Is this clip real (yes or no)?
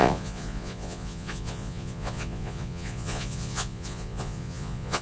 no